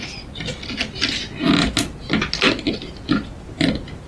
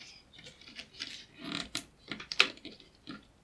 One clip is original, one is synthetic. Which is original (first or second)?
first